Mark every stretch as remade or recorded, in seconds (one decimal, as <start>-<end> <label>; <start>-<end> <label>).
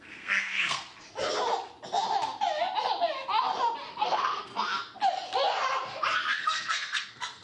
0.0-0.9 remade; 0.9-3.9 recorded; 3.9-4.5 remade; 4.5-6.4 recorded; 6.4-7.4 remade